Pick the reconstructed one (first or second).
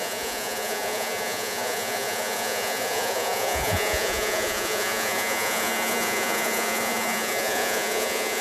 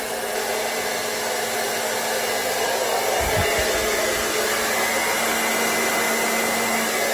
first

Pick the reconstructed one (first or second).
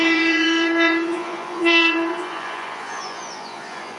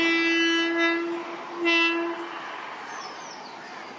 first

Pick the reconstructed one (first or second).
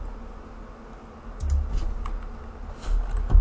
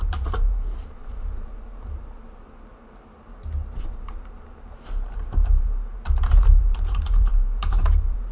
second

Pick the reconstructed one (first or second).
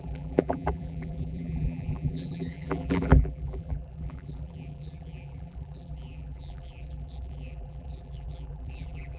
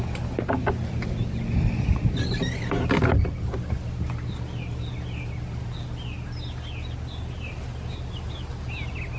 first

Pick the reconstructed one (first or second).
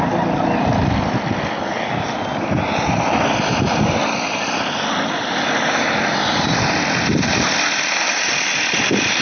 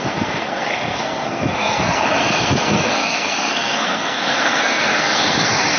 second